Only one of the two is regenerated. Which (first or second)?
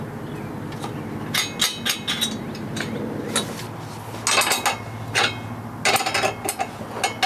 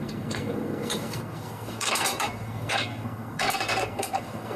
second